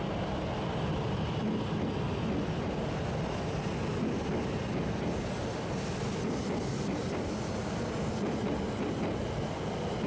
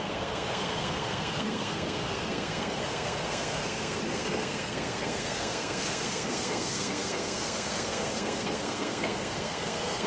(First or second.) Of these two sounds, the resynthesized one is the second